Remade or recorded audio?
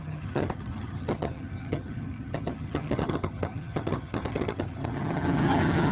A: remade